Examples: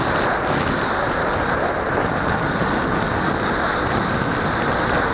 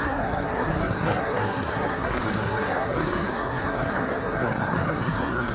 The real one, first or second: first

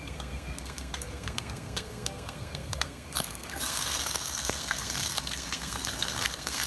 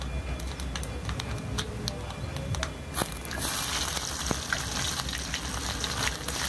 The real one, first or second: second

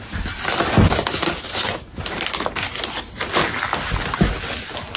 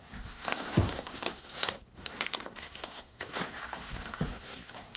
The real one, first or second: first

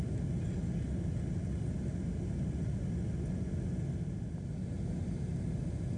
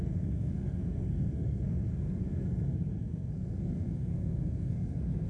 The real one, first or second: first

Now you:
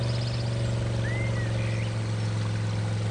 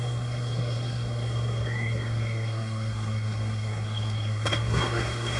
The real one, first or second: first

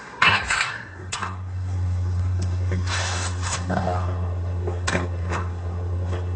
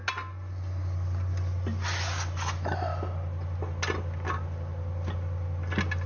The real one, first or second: second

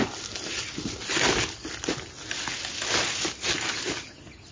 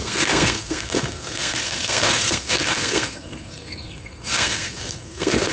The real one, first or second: first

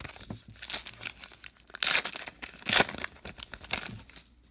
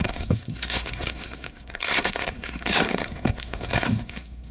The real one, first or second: first